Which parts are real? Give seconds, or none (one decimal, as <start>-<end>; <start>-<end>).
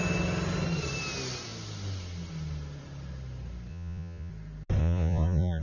0.0-3.7; 4.3-4.8